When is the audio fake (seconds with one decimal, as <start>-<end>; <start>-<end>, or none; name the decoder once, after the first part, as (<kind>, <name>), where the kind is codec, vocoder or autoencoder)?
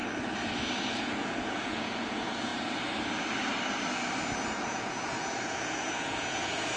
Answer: 0.9-2.5 (vocoder, Vocos); 4.6-6.8